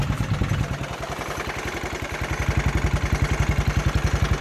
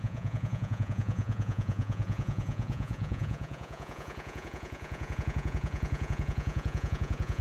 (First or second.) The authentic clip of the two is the first